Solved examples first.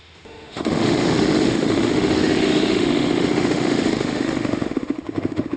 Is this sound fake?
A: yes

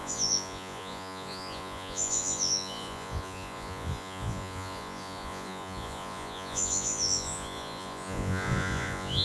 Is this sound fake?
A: yes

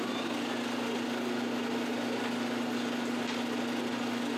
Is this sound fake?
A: no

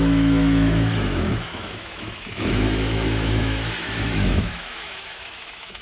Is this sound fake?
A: yes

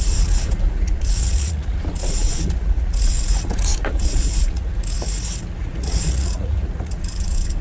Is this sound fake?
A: yes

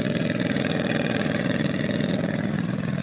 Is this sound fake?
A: yes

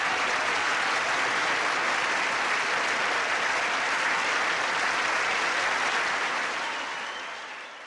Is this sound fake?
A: no